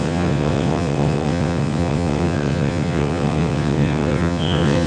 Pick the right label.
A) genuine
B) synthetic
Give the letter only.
B